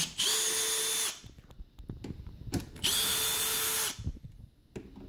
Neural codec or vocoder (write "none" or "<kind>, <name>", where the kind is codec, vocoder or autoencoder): none